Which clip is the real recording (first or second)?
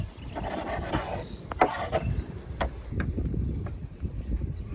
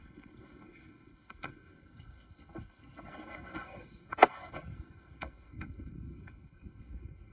first